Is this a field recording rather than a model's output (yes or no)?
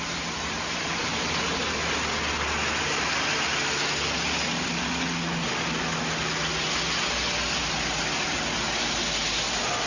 yes